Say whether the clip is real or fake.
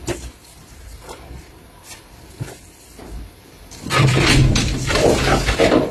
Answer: fake